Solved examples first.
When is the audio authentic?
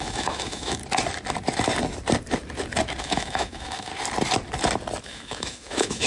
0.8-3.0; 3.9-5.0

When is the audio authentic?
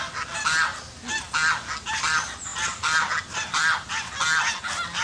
0.0-5.0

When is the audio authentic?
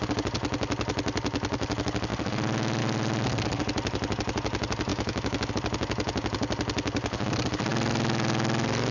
0.0-4.9; 5.5-8.9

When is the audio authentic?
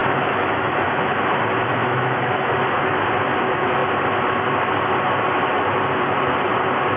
0.7-1.8; 2.5-7.0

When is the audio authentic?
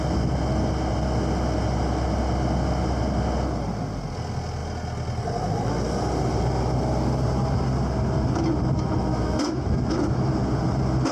0.0-9.1; 10.3-11.1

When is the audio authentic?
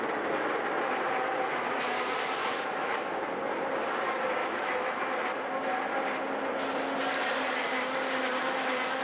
0.0-2.4; 3.1-4.4; 4.9-9.0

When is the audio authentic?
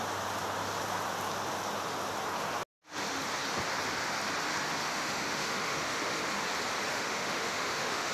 0.0-4.8; 6.2-6.9